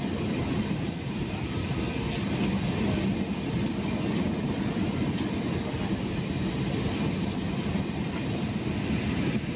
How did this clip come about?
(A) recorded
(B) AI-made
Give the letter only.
A